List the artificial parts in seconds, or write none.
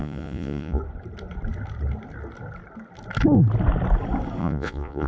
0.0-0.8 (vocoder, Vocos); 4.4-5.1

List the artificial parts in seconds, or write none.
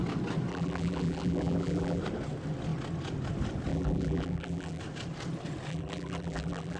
0.5-2.0 (vocoder, BigVGAN v2); 3.7-4.8; 5.7-6.8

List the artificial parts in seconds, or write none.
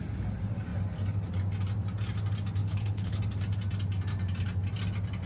2.6-3.2 (codec, HILCodec)